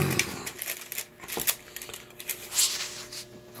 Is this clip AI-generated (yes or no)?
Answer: no